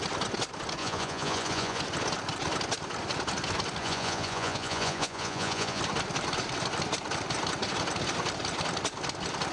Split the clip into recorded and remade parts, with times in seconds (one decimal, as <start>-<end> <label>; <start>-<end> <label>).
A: 0.0-0.8 recorded; 0.8-1.8 remade; 1.8-3.8 recorded; 3.8-5.8 remade; 5.8-9.5 recorded